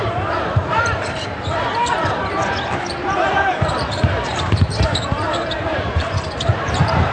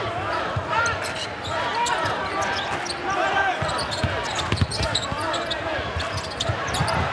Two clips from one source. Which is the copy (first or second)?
first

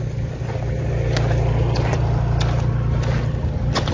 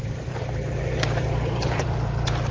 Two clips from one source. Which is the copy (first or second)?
second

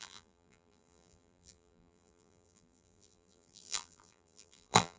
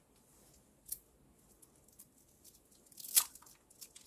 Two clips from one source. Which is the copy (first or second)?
first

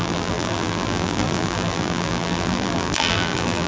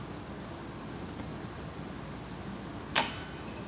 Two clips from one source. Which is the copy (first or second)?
first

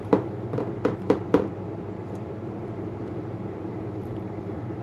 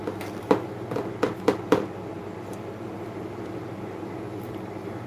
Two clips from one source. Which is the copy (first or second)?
first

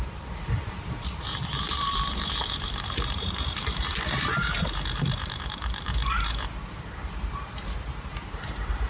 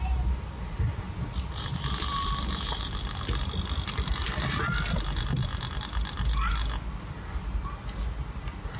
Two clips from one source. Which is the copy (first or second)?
first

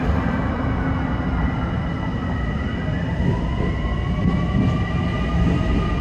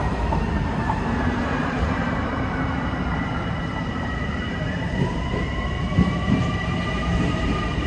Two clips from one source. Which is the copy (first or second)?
second